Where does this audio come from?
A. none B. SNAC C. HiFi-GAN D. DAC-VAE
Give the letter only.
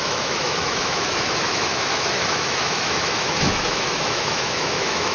D